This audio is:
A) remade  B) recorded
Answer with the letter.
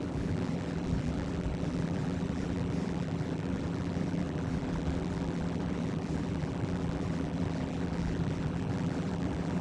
A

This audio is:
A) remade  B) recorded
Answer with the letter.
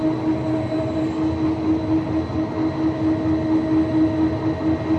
B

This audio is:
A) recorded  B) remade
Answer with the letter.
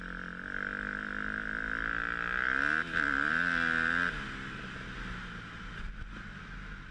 A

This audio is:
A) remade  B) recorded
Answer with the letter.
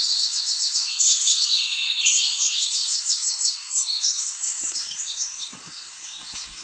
A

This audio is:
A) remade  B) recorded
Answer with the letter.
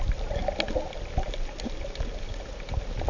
B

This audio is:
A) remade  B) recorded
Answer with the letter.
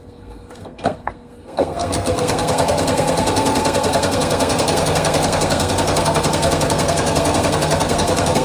A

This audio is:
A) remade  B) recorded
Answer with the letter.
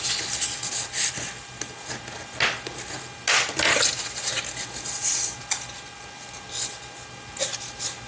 B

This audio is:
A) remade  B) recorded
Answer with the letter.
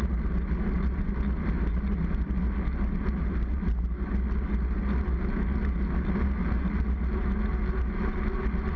B